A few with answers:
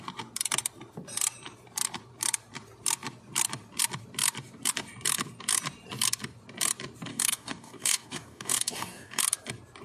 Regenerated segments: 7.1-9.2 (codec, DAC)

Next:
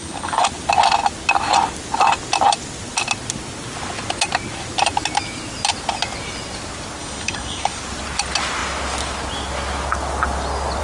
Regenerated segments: 0.0-0.5 (codec, DAC); 7.0-7.8

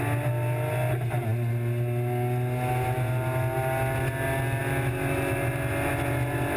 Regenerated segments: none

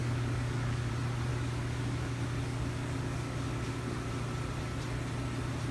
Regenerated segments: 0.0-0.9 (codec, DAC); 1.3-4.1

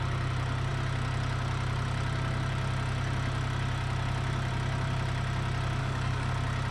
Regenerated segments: 5.8-6.3 (codec, DAC)